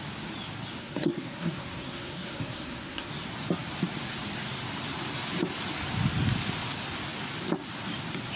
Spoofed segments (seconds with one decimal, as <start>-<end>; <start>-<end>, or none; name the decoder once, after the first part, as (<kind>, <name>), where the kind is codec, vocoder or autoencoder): 0.8-3.1 (codec, SNAC)